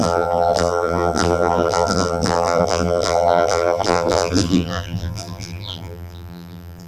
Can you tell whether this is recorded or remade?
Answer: remade